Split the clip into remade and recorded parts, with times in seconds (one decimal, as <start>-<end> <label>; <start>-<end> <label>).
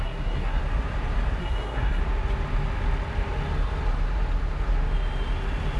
0.0-0.6 remade; 0.6-1.4 recorded; 1.4-2.0 remade; 2.0-5.8 recorded